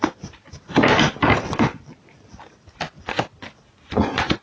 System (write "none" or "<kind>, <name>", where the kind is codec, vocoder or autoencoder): none